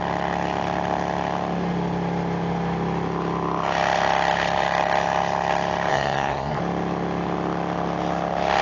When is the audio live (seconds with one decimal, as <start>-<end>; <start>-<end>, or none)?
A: 0.0-5.9; 6.6-8.6